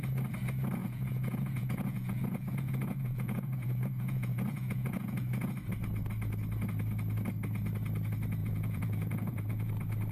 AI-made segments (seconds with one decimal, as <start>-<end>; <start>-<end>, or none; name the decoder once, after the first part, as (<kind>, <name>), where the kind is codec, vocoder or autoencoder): 0.8-5.5 (vocoder, Vocos); 8.4-9.7